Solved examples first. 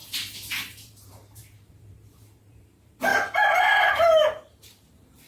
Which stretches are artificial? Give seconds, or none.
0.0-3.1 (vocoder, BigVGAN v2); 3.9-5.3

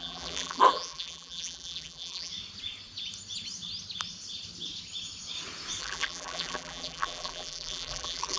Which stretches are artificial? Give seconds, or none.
0.0-2.3 (vocoder, BigVGAN v2); 5.8-8.4

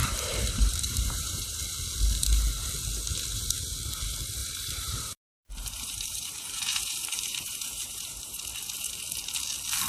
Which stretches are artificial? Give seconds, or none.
0.0-1.6 (vocoder, BigVGAN v2); 4.4-8.4